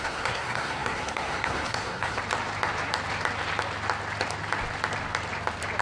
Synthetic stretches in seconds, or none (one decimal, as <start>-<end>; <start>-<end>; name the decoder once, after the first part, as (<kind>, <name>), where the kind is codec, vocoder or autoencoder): 0.0-2.2 (codec, SNAC)